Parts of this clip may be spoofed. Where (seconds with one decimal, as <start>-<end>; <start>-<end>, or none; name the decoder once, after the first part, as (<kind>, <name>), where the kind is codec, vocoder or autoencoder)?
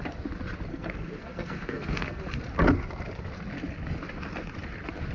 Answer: 0.7-2.2 (codec, SNAC)